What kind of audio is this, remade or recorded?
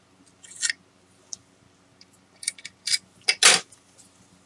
recorded